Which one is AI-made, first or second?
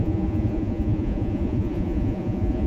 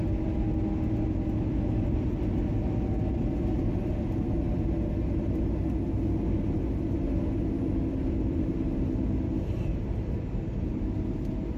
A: first